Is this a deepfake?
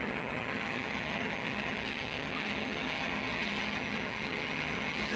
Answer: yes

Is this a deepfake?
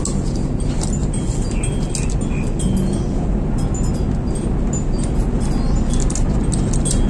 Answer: no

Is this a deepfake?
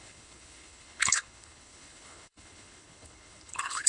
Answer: yes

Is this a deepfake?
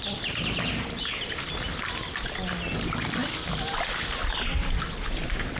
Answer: no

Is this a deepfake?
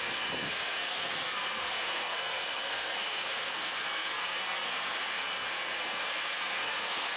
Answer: yes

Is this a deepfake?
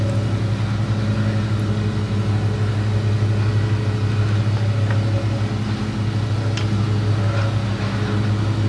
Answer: no